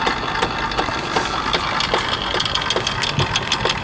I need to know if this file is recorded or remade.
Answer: recorded